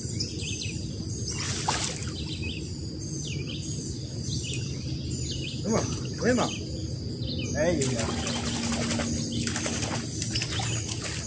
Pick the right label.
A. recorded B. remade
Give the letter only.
A